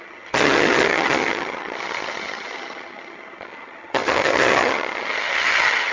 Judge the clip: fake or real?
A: fake